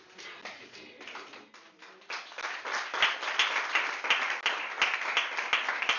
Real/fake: real